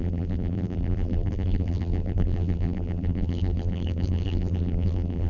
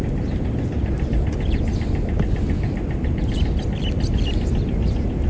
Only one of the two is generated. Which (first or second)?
first